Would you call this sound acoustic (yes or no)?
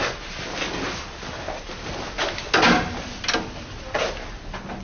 yes